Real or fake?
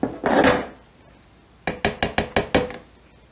real